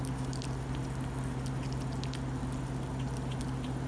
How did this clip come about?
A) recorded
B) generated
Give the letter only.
A